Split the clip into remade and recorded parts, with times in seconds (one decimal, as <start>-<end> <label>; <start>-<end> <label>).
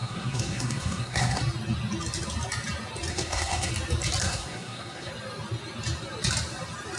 0.0-1.4 remade; 1.4-3.1 recorded; 3.1-3.7 remade; 3.7-4.2 recorded; 4.2-5.1 remade; 5.1-7.0 recorded